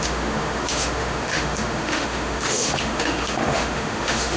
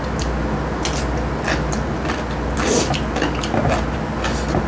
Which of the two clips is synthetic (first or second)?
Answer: first